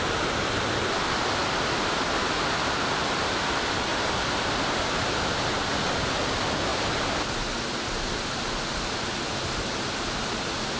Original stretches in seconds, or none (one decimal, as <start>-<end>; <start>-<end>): 0.0-6.7; 8.4-10.8